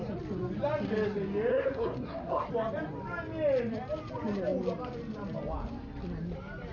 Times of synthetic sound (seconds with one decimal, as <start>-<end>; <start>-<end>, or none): 1.5-2.5